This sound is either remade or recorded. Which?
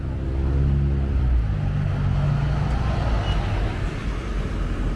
recorded